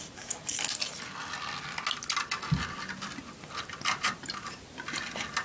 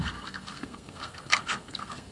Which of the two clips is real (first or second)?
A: first